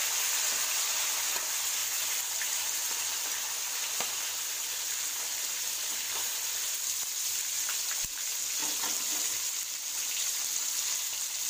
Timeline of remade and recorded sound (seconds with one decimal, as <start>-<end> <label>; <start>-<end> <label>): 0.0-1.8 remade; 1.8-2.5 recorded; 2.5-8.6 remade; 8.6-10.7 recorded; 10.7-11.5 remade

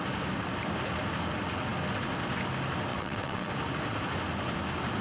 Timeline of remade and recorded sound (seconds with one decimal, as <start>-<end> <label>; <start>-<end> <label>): 0.0-2.9 recorded; 2.9-3.5 remade; 3.5-5.0 recorded

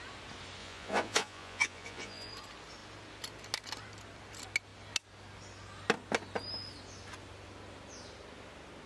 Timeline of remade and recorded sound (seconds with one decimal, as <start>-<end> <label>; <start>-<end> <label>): 0.0-0.6 recorded; 0.6-2.3 remade; 2.3-8.9 recorded

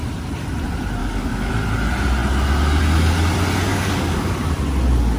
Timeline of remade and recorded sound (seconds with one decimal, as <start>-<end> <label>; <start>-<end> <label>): 0.0-1.0 recorded; 1.0-1.5 remade; 1.5-3.7 recorded; 3.7-4.5 remade; 4.5-5.2 recorded

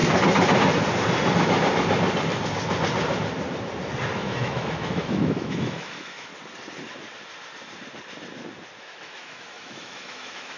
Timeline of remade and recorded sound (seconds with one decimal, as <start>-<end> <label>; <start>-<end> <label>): 0.0-4.1 recorded; 4.1-6.3 remade; 6.3-8.8 recorded; 8.8-10.6 remade